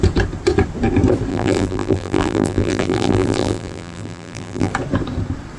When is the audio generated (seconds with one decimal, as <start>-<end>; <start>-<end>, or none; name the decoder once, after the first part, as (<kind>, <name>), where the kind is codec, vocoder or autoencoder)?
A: 1.3-4.7 (vocoder, BigVGAN v2)

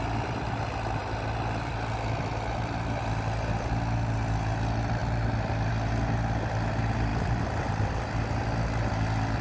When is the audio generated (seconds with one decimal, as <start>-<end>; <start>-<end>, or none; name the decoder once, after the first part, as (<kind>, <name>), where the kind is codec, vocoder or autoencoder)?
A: 1.0-3.0 (vocoder, BigVGAN v2); 5.0-5.7; 7.1-8.0

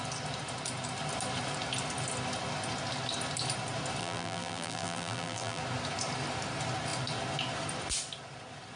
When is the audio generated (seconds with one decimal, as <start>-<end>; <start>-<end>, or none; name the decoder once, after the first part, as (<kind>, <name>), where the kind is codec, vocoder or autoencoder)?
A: 4.0-5.6 (vocoder, BigVGAN v2)